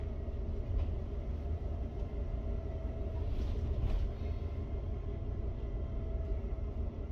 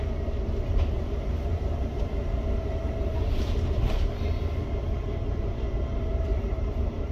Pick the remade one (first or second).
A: second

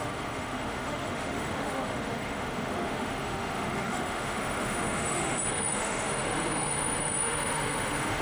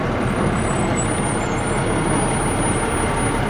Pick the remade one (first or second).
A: first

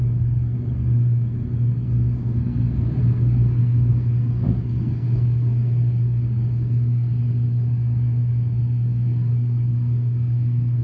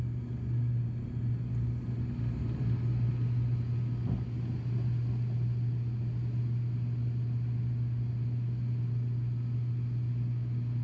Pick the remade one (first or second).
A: first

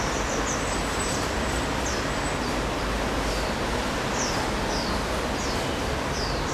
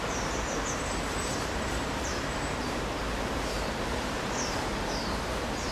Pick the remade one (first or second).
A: second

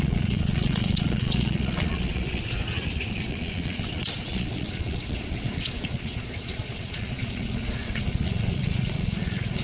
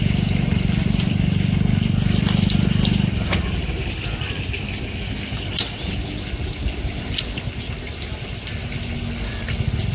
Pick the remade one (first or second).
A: first